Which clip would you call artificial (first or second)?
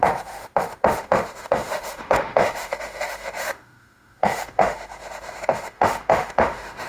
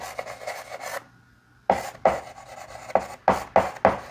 first